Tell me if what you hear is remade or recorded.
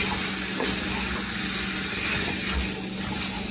recorded